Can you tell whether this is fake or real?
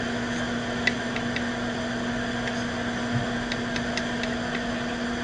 real